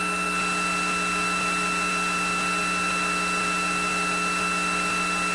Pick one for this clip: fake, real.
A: real